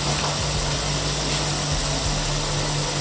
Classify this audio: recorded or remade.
recorded